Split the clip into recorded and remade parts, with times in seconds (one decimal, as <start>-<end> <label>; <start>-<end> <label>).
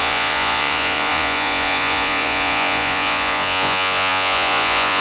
0.0-5.0 remade